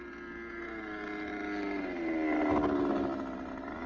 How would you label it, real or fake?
real